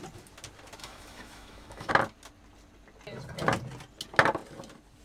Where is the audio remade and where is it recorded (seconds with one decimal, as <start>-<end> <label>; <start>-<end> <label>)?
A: 0.0-0.8 recorded; 0.8-1.9 remade; 1.9-5.0 recorded